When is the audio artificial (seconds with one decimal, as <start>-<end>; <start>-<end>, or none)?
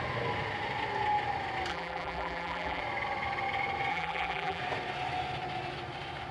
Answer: 1.7-2.8; 3.9-4.6